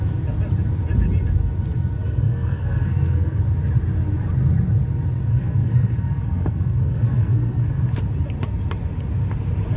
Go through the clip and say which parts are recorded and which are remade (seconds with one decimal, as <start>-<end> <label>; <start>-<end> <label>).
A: 0.0-2.0 recorded; 2.0-3.4 remade; 3.4-5.3 recorded; 5.3-8.0 remade; 8.0-9.8 recorded